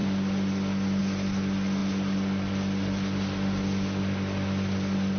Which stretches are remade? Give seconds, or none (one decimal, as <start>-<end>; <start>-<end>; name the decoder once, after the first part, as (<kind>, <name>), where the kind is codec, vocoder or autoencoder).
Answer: none